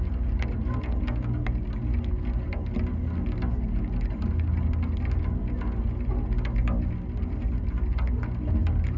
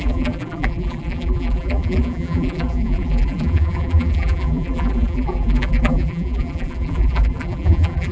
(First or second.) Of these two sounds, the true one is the first